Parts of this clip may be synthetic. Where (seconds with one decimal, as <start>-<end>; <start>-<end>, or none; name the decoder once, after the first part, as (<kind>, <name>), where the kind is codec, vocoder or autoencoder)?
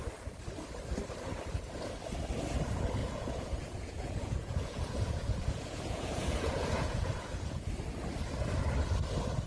3.0-7.7 (vocoder, Vocos)